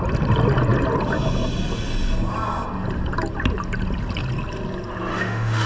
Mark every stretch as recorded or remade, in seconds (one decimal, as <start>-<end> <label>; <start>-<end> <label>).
0.0-5.1 recorded; 5.1-5.7 remade